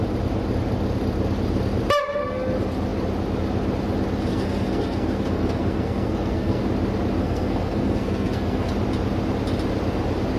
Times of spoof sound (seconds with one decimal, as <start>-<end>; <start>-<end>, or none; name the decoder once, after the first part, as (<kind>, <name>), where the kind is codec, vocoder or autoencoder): 4.3-6.6 (codec, SNAC); 7.2-8.7